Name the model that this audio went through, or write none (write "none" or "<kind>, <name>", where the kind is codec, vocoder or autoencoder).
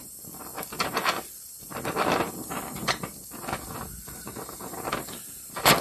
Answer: vocoder, BigVGAN v2